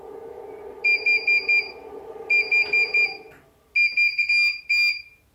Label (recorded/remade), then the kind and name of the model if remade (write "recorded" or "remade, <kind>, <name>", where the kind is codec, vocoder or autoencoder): recorded